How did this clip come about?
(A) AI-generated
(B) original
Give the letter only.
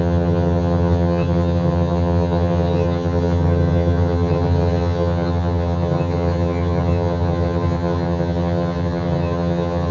A